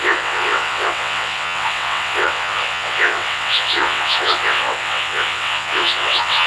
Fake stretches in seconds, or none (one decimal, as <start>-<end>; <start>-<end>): 0.0-6.5